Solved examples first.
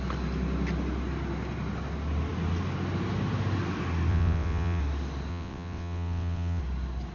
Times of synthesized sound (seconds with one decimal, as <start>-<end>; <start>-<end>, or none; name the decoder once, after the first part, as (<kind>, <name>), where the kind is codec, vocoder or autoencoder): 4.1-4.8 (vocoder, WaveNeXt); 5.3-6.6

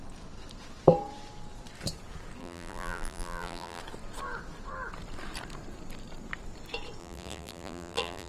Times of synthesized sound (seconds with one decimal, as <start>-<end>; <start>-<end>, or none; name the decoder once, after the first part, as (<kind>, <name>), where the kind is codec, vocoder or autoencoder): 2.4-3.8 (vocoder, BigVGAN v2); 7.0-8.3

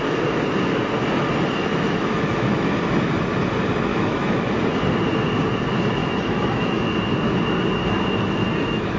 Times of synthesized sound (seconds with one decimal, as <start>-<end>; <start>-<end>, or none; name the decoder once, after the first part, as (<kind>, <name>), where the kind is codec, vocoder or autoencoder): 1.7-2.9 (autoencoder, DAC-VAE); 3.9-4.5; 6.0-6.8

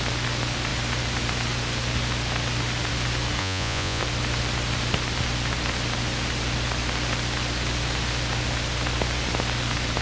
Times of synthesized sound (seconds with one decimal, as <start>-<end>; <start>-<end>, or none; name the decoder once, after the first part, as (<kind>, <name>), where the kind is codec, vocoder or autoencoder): 3.4-4.0 (vocoder, Vocos)

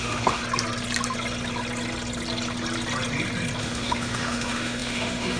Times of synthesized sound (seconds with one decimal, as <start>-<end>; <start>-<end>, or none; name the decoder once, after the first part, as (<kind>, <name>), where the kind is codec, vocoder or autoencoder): 0.0-0.4 (autoencoder, DAC-VAE); 3.6-5.4

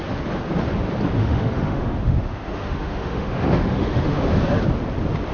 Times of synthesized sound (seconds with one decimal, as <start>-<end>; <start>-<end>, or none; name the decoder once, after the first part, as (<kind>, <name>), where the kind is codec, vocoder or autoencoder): 1.2-4.4 (autoencoder, DAC-VAE)

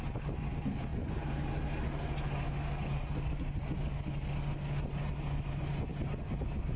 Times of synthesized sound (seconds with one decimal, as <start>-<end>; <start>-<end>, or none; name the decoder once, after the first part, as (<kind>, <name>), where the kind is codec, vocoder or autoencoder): none